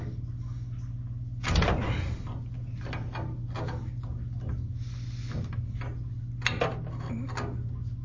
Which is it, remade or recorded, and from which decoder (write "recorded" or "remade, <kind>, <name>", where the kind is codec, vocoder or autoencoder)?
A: recorded